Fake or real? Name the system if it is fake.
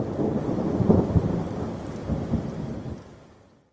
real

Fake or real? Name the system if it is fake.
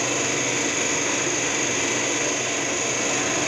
real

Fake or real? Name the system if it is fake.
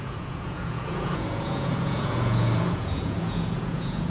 fake, vocoder, Vocos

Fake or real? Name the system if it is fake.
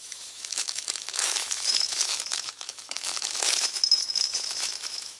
fake, autoencoder, DAC-VAE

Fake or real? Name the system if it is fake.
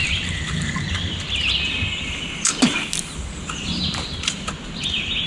real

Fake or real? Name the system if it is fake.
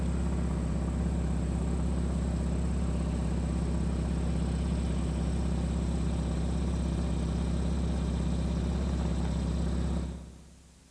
real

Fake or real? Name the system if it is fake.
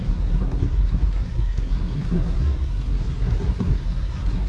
fake, codec, SNAC